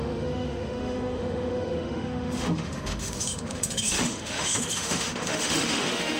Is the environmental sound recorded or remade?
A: remade